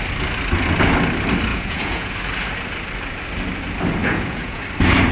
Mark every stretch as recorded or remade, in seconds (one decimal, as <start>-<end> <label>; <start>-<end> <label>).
0.0-1.5 recorded; 1.5-2.1 remade; 2.1-4.0 recorded; 4.0-4.6 remade; 4.6-5.1 recorded